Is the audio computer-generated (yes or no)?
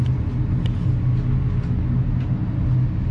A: no